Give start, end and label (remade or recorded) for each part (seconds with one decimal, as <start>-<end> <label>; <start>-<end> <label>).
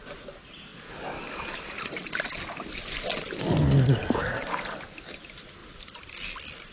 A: 0.0-6.7 recorded